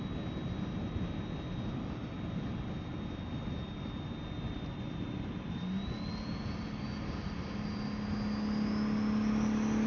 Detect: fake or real real